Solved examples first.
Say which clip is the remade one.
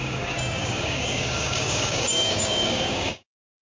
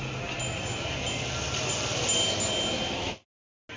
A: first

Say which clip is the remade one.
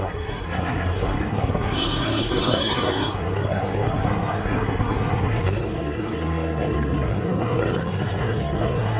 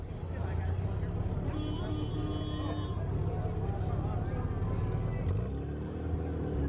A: first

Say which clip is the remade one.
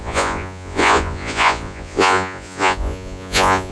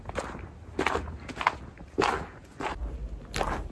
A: first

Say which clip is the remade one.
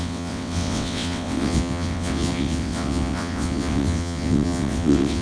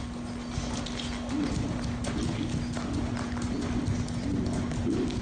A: first